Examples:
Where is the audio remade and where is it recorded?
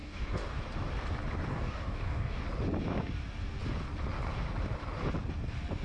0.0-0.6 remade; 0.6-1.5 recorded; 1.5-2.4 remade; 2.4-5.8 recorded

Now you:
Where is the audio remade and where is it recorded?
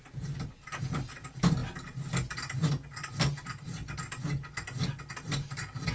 0.0-5.9 recorded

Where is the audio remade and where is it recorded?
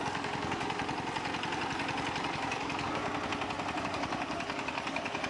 0.0-0.8 remade; 0.8-2.2 recorded; 2.2-3.0 remade; 3.0-3.8 recorded; 3.8-5.3 remade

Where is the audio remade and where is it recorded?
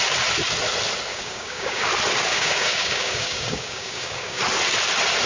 0.0-1.1 recorded; 1.1-1.9 remade; 1.9-2.3 recorded; 2.3-4.4 remade; 4.4-5.3 recorded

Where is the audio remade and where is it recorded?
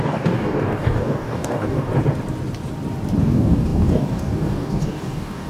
0.0-1.9 remade; 1.9-3.2 recorded; 3.2-5.5 remade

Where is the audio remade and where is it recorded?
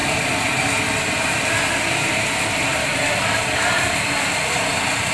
0.0-5.1 recorded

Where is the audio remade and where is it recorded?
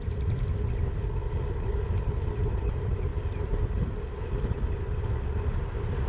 0.0-6.1 recorded